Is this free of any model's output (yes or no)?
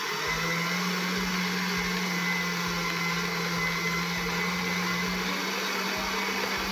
yes